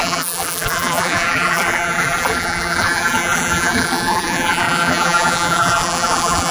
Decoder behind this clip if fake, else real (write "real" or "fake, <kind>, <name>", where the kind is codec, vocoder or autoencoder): fake, vocoder, BigVGAN v2